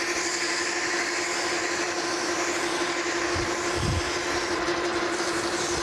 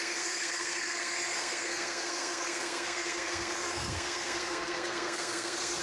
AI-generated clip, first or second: second